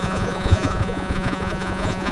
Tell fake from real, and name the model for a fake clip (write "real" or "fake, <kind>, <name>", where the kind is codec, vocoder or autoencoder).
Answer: fake, vocoder, Vocos